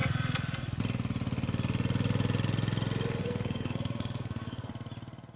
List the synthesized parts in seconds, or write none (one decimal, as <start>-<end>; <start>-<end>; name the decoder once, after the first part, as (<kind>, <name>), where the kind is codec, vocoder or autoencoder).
3.2-4.7 (codec, SNAC)